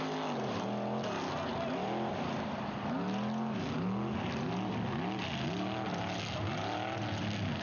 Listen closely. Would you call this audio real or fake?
real